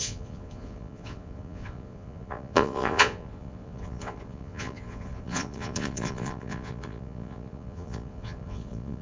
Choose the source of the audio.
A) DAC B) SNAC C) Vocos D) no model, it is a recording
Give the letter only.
C